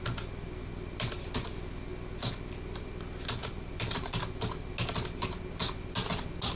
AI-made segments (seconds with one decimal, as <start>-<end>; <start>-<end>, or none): 3.4-4.2